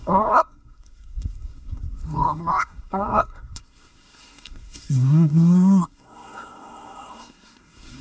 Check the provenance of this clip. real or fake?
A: fake